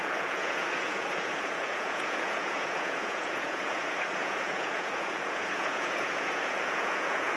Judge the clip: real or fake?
fake